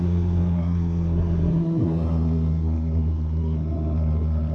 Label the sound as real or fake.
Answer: fake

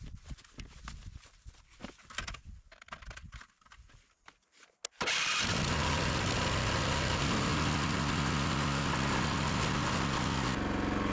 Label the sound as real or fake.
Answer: real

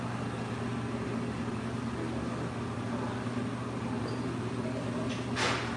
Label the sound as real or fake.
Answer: real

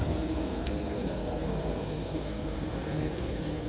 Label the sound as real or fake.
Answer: fake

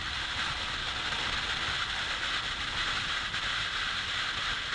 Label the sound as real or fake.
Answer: real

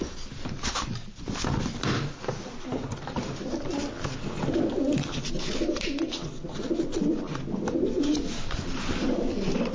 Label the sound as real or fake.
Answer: real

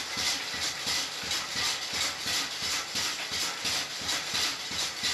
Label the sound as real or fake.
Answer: real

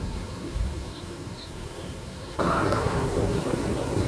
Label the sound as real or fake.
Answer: fake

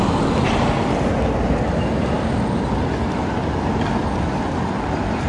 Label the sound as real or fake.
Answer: real